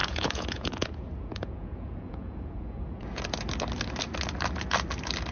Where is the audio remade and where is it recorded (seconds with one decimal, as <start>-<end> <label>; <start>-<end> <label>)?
0.0-3.2 remade; 3.2-5.3 recorded